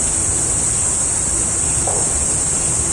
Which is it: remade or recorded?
recorded